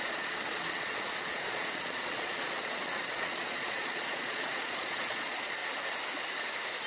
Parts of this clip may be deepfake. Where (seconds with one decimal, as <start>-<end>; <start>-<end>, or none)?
0.0-5.6